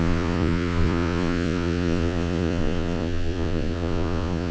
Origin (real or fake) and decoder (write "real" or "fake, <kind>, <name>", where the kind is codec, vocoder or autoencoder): fake, vocoder, Vocos